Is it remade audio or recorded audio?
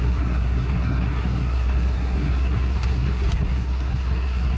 remade